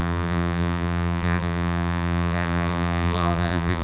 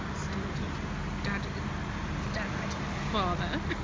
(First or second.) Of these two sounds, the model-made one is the first